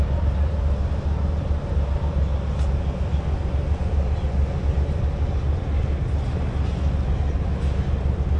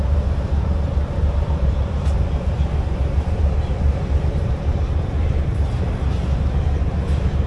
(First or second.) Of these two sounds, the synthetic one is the second